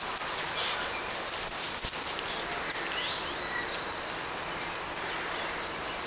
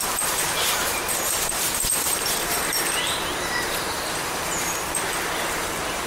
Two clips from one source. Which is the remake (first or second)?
second